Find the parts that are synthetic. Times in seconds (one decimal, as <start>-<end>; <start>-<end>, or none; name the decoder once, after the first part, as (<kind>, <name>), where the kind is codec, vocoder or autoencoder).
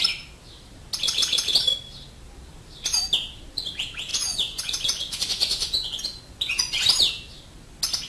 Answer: 4.1-6.8 (vocoder, Vocos)